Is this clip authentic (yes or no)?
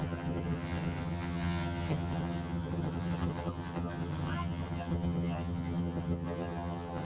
no